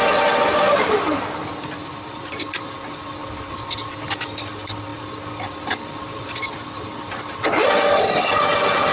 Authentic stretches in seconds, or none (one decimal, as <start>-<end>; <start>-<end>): 0.0-8.9